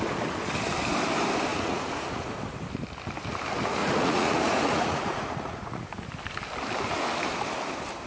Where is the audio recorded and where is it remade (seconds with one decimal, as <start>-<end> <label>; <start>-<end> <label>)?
0.0-1.5 recorded; 1.5-2.3 remade; 2.3-3.8 recorded; 3.8-5.8 remade; 5.8-8.1 recorded